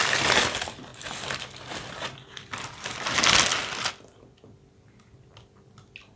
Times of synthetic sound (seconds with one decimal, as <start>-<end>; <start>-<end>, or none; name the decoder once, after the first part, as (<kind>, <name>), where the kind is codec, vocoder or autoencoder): none

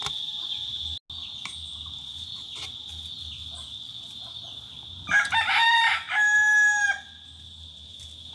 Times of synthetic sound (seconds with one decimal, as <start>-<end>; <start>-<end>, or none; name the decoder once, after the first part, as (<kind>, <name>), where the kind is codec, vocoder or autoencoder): none